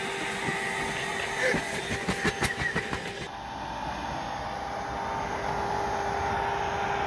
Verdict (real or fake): real